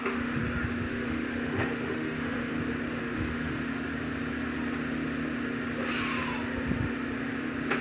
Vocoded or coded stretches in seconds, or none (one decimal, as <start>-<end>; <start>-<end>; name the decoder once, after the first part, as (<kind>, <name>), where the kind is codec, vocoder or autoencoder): 0.0-0.4 (autoencoder, DAC-VAE); 0.9-2.5; 3.0-3.7